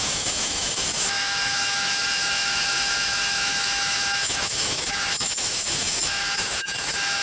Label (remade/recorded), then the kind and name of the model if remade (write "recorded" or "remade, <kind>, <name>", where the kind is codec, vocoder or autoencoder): remade, autoencoder, DAC-VAE